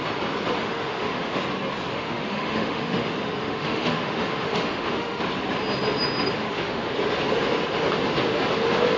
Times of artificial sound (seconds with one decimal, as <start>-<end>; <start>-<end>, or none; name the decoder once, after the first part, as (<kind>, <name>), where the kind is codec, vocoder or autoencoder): 0.6-1.4 (autoencoder, DAC-VAE); 1.9-5.2; 6.4-6.9